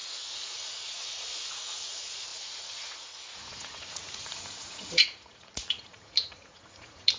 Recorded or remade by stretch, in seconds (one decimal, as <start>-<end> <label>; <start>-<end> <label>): 0.0-7.2 remade